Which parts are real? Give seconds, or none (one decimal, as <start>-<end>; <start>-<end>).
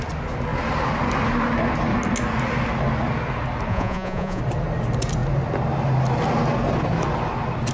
0.0-3.7; 4.4-7.7